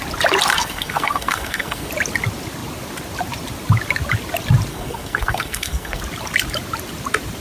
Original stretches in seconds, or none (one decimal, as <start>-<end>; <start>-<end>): 0.0-0.5; 1.9-4.7; 6.0-7.4